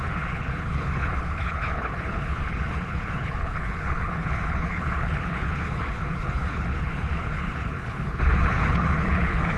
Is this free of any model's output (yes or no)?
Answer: no